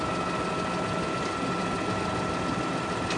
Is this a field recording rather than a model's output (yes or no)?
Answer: yes